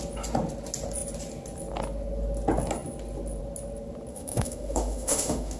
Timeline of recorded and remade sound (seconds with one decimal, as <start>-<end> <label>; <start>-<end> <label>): 0.0-4.1 recorded; 4.1-5.6 remade